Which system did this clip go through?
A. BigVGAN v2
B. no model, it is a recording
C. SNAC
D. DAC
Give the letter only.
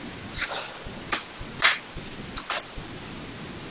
B